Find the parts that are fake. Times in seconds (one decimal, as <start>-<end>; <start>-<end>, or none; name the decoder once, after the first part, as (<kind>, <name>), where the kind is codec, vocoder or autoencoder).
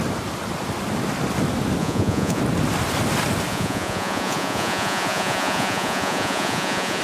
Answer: 1.8-2.4 (vocoder, Vocos); 3.5-7.0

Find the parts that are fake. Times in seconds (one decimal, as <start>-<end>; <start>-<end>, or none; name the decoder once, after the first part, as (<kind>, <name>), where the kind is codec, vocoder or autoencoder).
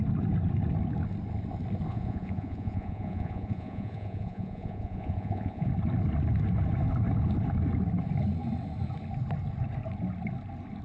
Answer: 1.9-5.7 (vocoder, Vocos)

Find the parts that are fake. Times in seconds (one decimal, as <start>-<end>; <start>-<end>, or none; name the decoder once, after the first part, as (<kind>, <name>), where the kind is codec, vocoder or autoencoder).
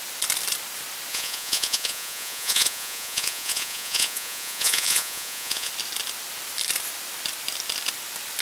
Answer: 1.1-5.7 (vocoder, Vocos)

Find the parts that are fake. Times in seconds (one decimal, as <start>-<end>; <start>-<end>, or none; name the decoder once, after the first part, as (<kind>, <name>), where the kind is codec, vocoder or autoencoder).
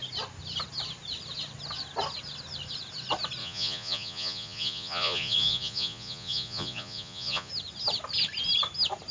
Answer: 3.4-7.5 (vocoder, Vocos)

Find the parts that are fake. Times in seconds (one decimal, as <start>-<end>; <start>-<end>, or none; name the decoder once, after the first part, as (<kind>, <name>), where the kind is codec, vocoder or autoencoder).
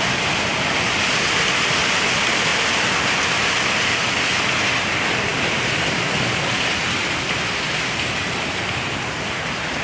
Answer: none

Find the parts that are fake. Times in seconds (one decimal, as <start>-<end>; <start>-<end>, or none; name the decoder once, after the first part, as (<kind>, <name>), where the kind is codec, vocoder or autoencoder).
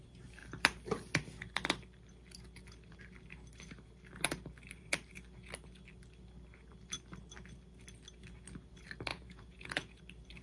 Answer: 9.1-10.0 (vocoder, Vocos)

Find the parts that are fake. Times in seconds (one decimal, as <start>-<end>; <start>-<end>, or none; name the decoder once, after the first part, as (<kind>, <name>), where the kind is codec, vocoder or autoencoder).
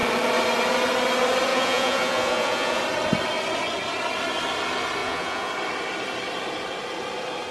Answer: 1.5-2.8 (vocoder, Vocos); 5.0-5.5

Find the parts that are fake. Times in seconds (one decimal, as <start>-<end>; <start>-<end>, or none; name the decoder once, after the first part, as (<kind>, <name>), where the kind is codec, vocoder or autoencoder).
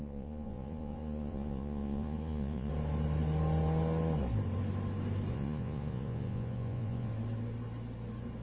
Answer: 0.0-2.7 (vocoder, Vocos); 5.3-7.1